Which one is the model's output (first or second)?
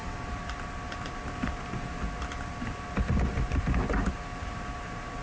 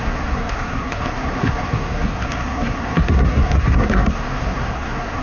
second